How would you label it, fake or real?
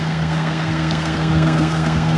fake